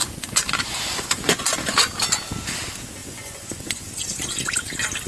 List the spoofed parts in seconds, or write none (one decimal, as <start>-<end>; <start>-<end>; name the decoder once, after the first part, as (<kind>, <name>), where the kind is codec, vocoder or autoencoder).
0.0-1.3 (vocoder, Vocos); 3.0-3.9